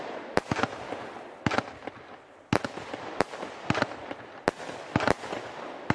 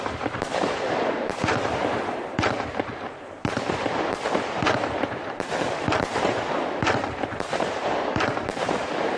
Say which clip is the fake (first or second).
second